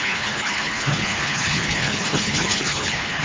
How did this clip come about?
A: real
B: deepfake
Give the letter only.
B